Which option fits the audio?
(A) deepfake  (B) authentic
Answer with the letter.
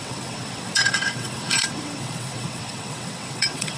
A